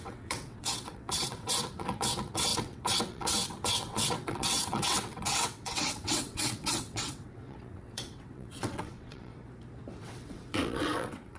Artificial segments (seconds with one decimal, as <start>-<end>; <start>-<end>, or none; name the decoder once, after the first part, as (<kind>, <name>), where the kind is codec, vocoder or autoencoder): 0.0-9.3 (vocoder, WaveNeXt); 10.0-11.4